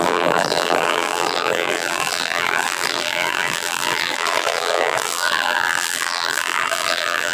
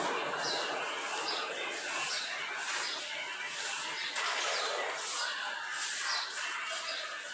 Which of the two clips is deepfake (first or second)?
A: first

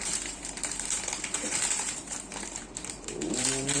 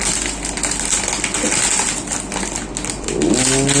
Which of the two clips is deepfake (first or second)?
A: first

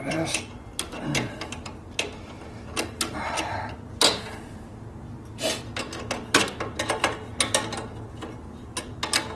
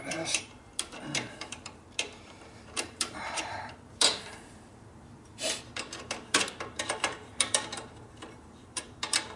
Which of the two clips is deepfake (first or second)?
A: second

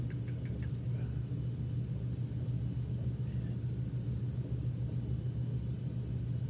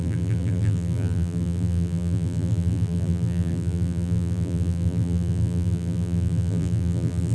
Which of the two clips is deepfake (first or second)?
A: second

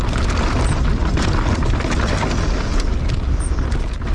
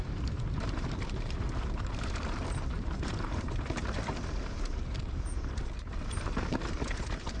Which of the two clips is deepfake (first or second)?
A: second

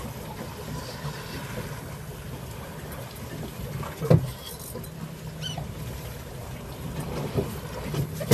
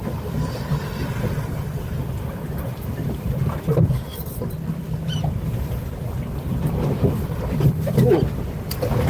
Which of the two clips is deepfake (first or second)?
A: second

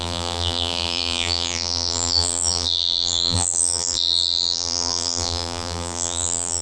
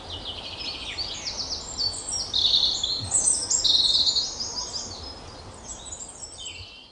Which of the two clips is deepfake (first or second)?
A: first